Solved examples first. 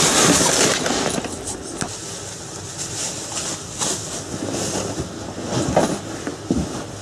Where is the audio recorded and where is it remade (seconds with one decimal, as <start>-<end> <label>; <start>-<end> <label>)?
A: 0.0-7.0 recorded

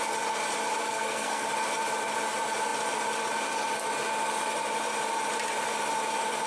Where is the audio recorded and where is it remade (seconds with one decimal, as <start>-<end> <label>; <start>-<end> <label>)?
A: 0.0-0.8 recorded; 0.8-1.5 remade; 1.5-6.5 recorded

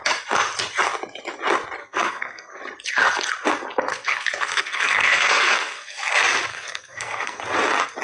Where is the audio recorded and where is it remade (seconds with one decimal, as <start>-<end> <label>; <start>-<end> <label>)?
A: 0.0-1.8 recorded; 1.8-2.6 remade; 2.6-3.9 recorded; 3.9-6.1 remade; 6.1-6.5 recorded; 6.5-7.4 remade; 7.4-8.0 recorded

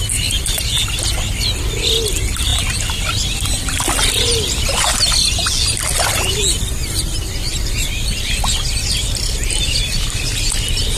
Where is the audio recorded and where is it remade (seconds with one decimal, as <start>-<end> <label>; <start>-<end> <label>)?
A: 0.0-11.0 recorded